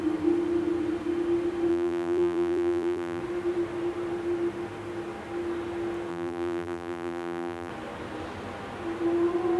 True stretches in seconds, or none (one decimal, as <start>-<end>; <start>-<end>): 0.0-1.7; 3.2-6.1; 7.7-9.6